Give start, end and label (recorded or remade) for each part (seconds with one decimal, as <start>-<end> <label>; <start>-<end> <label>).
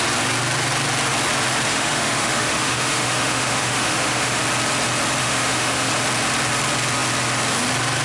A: 0.0-1.7 recorded; 1.7-4.4 remade; 4.4-5.2 recorded; 5.2-5.9 remade; 5.9-8.0 recorded